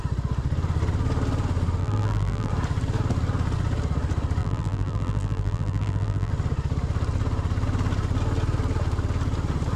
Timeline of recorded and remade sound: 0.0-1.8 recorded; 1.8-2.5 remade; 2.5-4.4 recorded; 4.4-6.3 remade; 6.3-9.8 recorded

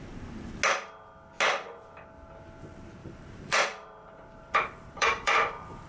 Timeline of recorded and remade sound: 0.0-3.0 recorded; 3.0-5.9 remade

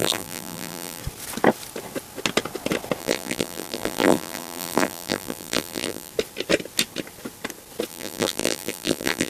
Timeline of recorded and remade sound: 0.0-1.0 remade; 1.0-3.0 recorded; 3.0-6.1 remade; 6.1-7.9 recorded; 7.9-9.3 remade

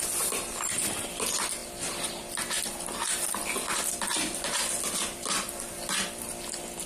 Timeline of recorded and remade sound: 0.0-6.9 recorded

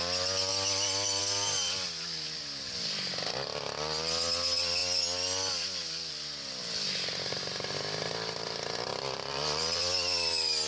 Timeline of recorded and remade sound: 0.0-8.9 recorded; 8.9-9.8 remade; 9.8-10.7 recorded